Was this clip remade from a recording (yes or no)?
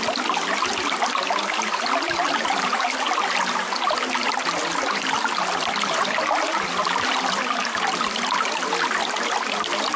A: no